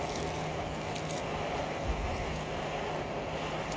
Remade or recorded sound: recorded